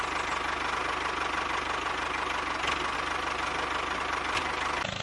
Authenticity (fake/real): real